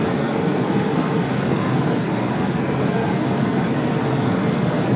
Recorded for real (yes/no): no